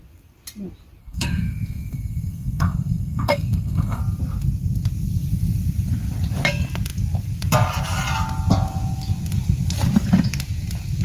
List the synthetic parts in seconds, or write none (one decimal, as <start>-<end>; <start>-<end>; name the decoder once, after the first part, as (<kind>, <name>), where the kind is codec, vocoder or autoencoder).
1.0-4.0 (codec, SNAC)